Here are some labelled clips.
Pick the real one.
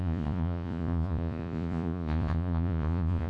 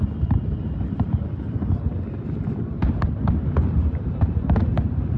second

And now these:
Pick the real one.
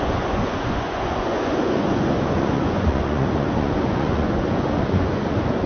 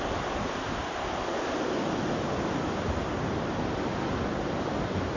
second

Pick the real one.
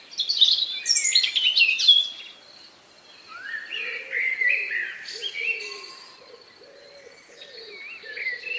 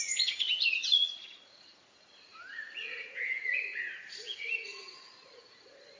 first